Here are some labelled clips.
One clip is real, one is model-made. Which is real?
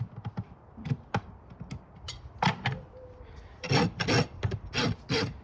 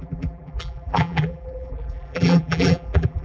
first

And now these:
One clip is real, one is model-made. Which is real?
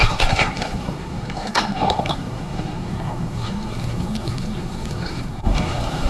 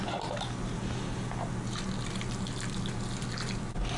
second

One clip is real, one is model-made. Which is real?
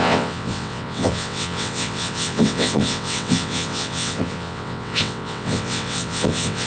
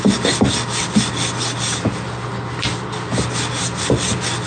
second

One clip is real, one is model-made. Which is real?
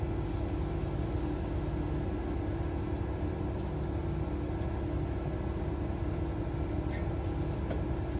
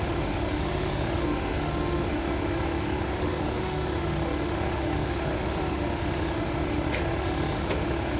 first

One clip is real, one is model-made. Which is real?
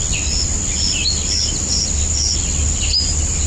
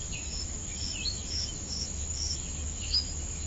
first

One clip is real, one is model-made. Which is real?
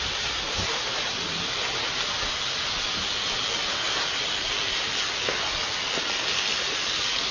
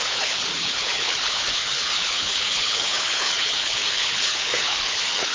first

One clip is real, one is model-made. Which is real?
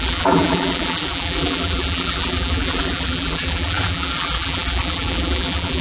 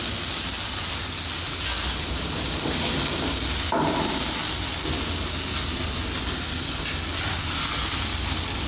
second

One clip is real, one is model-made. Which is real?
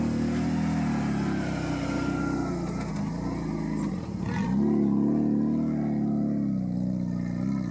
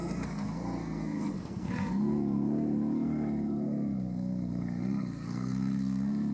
first